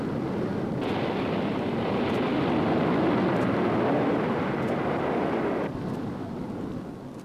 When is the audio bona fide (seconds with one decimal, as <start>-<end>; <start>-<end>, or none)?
0.0-7.2